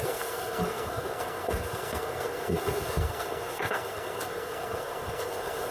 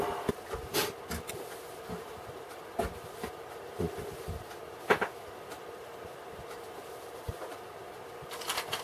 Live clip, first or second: second